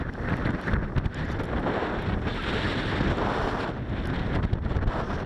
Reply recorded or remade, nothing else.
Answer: recorded